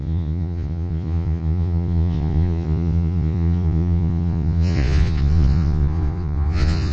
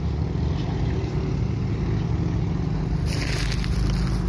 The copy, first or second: first